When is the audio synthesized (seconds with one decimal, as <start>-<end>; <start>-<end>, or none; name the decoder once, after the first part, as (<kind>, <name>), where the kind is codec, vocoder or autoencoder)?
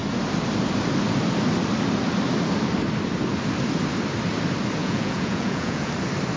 4.8-5.9 (vocoder, Vocos)